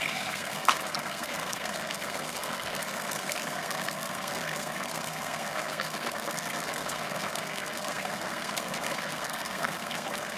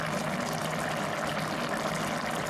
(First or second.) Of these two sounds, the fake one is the first